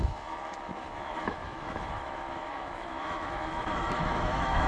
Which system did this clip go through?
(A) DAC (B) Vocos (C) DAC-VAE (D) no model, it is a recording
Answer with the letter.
C